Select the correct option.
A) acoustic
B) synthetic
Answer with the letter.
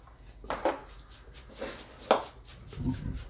A